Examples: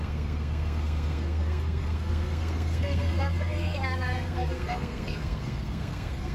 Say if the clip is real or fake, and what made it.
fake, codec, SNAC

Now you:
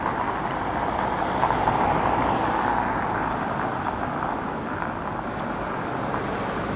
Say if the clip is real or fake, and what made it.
real